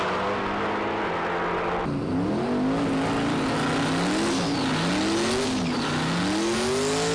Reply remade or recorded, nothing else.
recorded